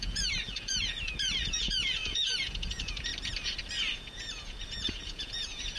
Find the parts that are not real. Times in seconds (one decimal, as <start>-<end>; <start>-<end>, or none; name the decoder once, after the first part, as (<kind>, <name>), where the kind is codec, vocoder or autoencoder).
0.0-3.1 (vocoder, Vocos); 3.9-5.8